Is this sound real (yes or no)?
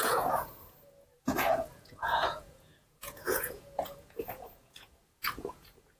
no